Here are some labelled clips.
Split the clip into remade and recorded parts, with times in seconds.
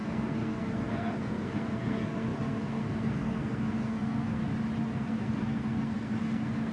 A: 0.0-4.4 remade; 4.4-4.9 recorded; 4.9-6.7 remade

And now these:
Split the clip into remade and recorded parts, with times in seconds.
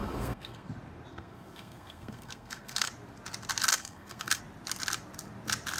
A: 0.0-0.7 remade; 0.7-1.1 recorded; 1.1-2.9 remade; 2.9-3.7 recorded; 3.7-4.4 remade; 4.4-5.8 recorded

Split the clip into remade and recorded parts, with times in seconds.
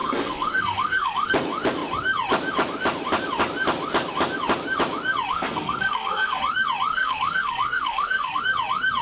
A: 0.0-1.3 remade; 1.3-5.3 recorded; 5.3-6.4 remade; 6.4-6.9 recorded; 6.9-8.4 remade; 8.4-9.0 recorded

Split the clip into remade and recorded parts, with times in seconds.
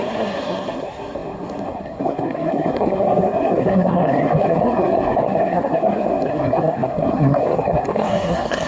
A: 0.0-8.7 remade